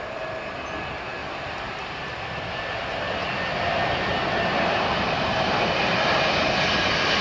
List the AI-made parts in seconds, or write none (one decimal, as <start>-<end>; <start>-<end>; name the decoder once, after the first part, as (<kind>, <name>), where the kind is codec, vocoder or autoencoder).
1.2-2.6 (vocoder, BigVGAN v2); 3.5-5.6